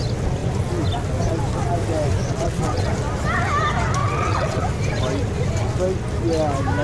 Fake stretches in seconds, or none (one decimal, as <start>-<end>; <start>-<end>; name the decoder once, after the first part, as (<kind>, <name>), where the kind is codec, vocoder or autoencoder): 2.2-2.9 (vocoder, WaveNeXt); 4.0-4.6